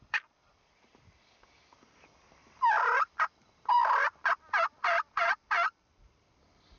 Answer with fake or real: fake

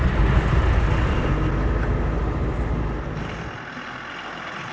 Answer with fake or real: real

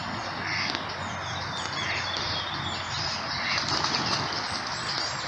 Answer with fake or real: real